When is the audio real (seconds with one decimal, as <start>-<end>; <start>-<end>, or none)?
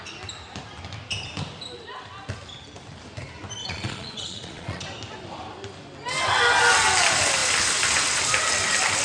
0.0-3.6; 4.8-9.0